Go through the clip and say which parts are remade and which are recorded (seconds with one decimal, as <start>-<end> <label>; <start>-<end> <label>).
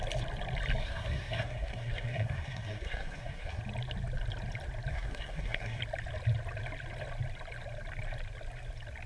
0.0-0.8 recorded; 0.8-3.6 remade; 3.6-4.9 recorded; 4.9-5.8 remade; 5.8-9.1 recorded